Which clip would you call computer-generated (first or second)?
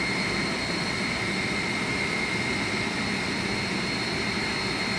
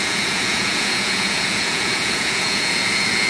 second